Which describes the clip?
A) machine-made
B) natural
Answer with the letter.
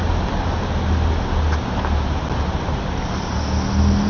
B